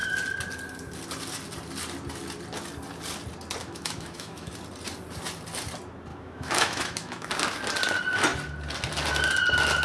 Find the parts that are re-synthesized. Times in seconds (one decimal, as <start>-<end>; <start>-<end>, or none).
3.6-4.5; 6.1-7.3